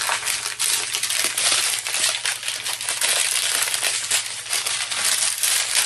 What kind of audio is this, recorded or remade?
recorded